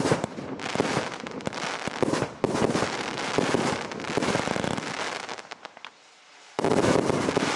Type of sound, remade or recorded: remade